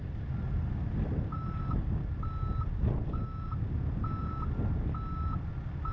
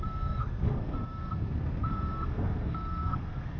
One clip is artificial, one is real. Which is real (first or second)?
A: first